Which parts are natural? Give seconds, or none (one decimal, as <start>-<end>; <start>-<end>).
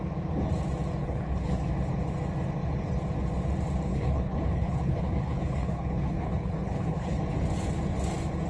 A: 0.0-1.0; 1.7-3.9; 7.2-8.5